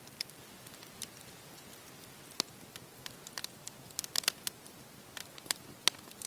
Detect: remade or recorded recorded